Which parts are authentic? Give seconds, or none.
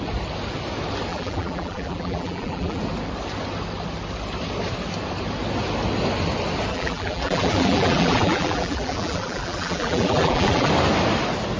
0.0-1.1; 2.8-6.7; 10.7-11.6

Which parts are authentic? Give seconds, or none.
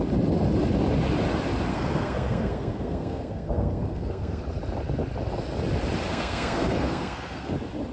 0.0-1.7; 4.4-6.1; 7.5-7.9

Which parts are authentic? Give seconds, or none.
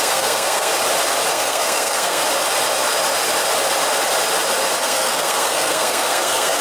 0.7-1.3; 2.2-4.8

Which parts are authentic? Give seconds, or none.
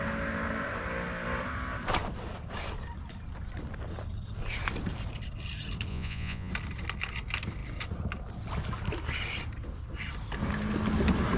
0.0-5.9; 6.5-11.4